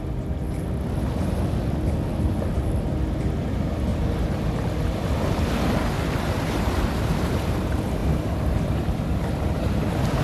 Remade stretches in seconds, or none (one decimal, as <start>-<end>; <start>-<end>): 3.9-5.5; 8.0-10.2